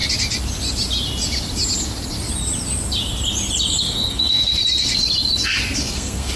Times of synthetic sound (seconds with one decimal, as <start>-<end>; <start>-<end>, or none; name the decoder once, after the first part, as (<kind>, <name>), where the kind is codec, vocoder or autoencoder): 3.8-4.5 (codec, SNAC); 5.8-6.4